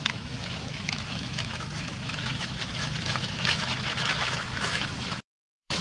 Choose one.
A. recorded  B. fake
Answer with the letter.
B